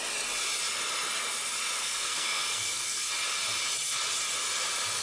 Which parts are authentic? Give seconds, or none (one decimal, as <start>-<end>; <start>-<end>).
0.0-1.8; 3.1-5.0